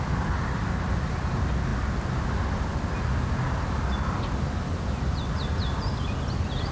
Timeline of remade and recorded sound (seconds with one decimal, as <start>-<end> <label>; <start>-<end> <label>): 0.0-6.7 recorded